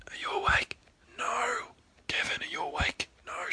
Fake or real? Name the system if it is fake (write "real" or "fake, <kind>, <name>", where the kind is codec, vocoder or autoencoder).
real